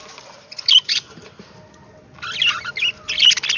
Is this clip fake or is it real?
real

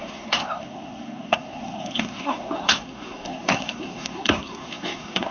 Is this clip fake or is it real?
fake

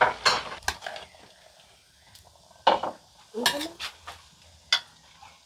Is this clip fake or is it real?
real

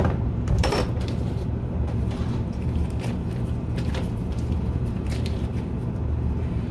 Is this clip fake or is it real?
fake